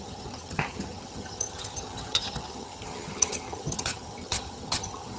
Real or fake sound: fake